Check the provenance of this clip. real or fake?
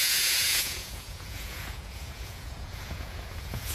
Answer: fake